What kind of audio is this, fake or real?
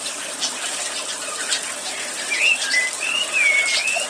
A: real